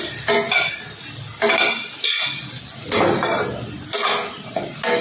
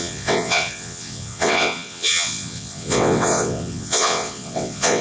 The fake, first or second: second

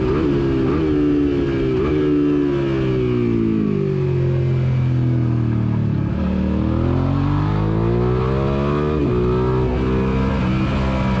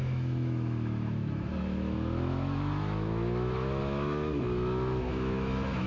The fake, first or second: second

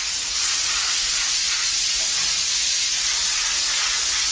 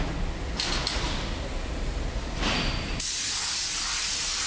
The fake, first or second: first